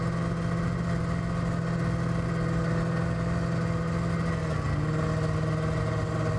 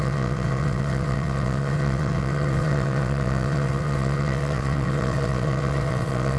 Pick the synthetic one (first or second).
second